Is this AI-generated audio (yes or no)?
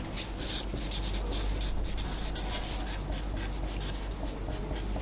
no